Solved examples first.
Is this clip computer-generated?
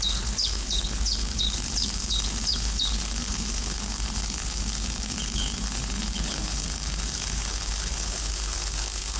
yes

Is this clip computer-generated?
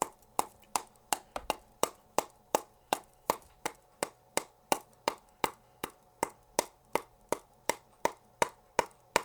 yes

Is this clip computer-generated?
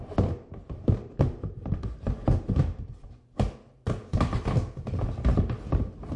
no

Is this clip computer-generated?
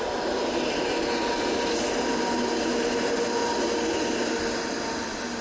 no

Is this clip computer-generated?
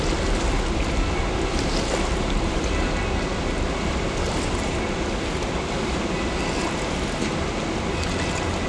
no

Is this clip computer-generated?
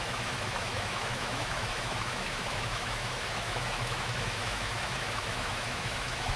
yes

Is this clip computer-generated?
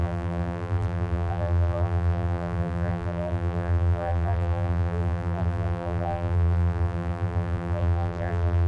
yes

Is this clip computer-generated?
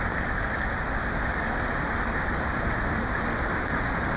no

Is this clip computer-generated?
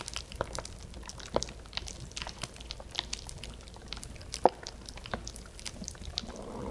no